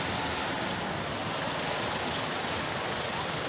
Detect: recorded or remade recorded